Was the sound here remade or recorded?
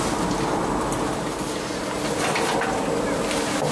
recorded